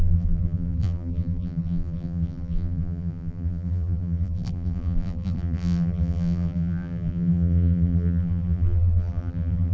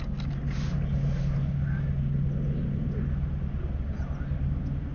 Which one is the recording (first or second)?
second